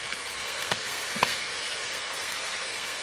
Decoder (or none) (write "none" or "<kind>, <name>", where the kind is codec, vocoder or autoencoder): codec, SNAC